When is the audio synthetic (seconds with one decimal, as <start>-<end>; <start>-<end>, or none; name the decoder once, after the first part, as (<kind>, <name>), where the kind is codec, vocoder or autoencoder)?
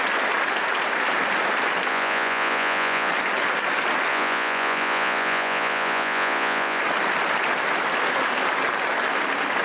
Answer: 1.9-3.1 (vocoder, Vocos); 4.1-6.8